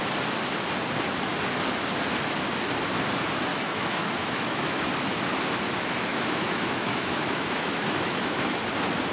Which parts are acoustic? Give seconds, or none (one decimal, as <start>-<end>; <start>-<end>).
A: 0.0-3.5; 4.9-6.1; 8.6-9.1